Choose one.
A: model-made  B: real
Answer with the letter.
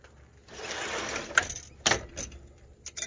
B